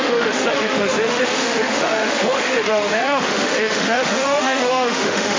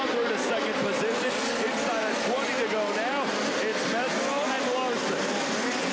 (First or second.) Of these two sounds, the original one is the second